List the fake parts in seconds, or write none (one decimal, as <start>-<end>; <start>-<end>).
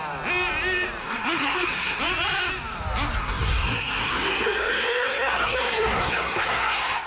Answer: 1.0-2.0; 3.2-7.1